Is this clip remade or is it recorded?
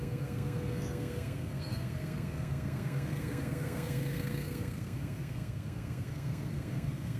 remade